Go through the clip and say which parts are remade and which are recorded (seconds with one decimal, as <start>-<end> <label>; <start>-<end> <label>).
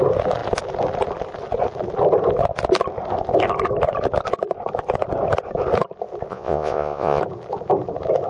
0.0-6.3 recorded; 6.3-7.2 remade; 7.2-8.3 recorded